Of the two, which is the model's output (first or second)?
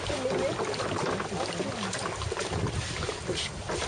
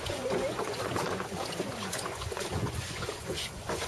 second